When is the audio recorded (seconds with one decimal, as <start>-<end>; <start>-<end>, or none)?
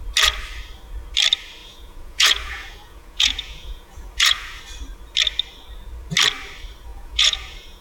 0.0-1.6; 4.6-6.9